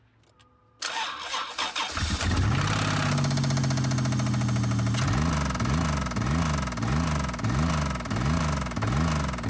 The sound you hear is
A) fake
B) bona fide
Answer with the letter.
B